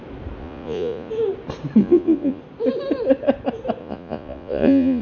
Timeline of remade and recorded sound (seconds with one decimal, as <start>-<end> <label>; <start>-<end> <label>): 0.0-0.4 recorded; 0.4-1.1 remade; 1.1-1.8 recorded; 1.8-2.4 remade; 2.4-3.8 recorded; 3.8-5.0 remade